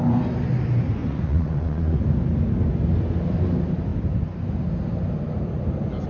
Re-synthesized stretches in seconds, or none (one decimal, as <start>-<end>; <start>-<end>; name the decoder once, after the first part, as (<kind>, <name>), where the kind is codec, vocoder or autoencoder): 1.0-2.0 (vocoder, Vocos)